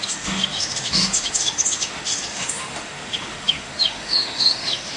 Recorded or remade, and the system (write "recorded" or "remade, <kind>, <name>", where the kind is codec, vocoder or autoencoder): remade, autoencoder, DAC-VAE